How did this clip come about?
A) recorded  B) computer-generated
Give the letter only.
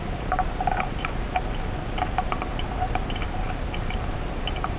A